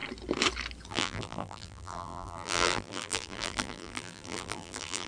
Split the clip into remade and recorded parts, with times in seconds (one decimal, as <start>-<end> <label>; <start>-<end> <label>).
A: 0.0-0.9 recorded; 0.9-5.1 remade